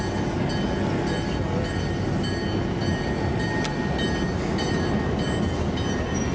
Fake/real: real